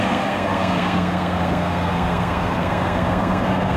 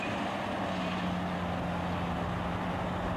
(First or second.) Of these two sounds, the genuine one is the second